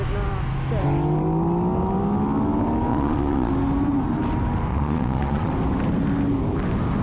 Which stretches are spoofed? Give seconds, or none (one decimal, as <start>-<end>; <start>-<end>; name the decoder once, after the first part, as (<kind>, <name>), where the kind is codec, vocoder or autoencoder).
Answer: 2.9-3.5 (vocoder, Vocos); 4.7-5.5